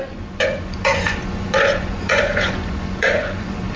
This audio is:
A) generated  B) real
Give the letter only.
A